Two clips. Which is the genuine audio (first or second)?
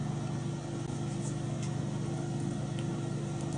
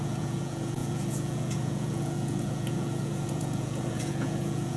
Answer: first